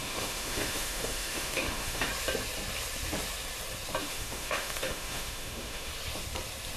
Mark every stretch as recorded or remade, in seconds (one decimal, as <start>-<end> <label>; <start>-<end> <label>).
0.0-2.1 remade; 2.1-4.0 recorded; 4.0-5.9 remade; 5.9-6.8 recorded